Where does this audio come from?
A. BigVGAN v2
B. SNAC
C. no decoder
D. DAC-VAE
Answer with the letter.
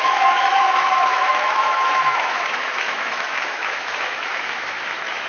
D